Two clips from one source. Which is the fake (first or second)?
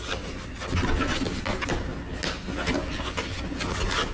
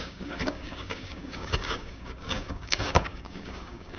second